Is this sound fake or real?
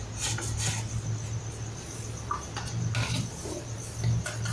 real